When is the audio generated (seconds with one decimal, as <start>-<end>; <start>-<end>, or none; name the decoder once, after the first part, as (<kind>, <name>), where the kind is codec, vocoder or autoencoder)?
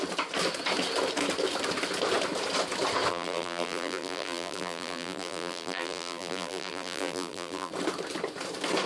3.1-7.7 (vocoder, BigVGAN v2)